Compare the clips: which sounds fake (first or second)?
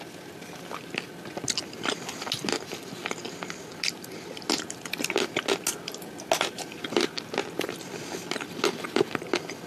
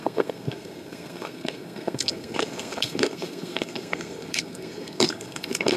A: second